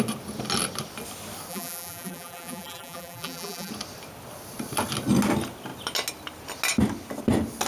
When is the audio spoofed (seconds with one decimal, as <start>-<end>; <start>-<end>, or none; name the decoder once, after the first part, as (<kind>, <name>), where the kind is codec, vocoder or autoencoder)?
1.5-3.7 (vocoder, BigVGAN v2)